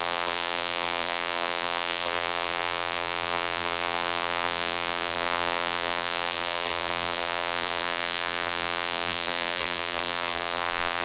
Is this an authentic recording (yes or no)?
no